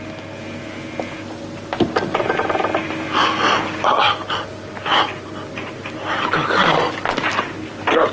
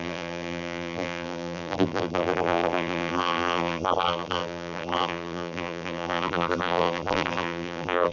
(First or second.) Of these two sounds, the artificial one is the second